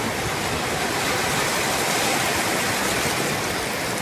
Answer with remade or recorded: recorded